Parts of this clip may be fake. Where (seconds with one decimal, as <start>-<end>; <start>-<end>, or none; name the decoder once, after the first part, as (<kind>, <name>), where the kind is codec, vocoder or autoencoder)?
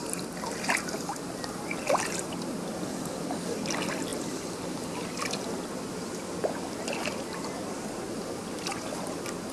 4.1-6.1 (vocoder, BigVGAN v2)